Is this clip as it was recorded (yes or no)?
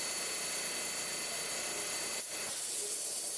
yes